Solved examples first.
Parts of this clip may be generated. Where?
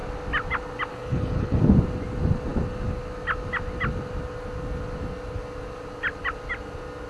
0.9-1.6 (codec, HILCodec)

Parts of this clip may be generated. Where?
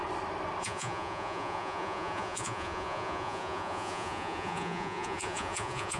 0.6-6.0 (vocoder, Vocos)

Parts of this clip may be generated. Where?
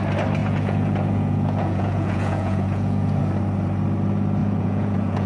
0.4-3.2 (vocoder, Vocos); 4.4-5.3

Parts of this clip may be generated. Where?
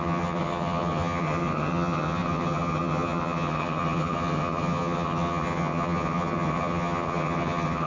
0.0-7.9 (vocoder, HiFi-GAN)